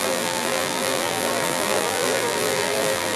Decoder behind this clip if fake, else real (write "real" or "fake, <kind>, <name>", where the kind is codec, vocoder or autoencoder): fake, vocoder, BigVGAN v2